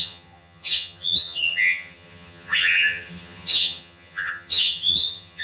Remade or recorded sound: remade